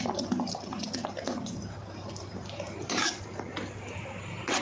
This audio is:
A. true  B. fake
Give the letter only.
A